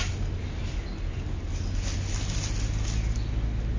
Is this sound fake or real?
real